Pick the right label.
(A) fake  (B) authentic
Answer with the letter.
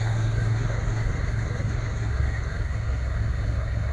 A